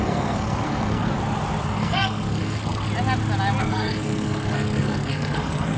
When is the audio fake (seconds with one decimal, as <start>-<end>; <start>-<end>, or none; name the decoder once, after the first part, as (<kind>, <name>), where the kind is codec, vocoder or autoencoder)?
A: 0.0-1.1 (codec, SNAC); 1.6-2.9; 3.6-5.8